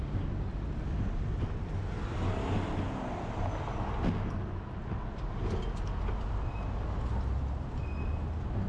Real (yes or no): yes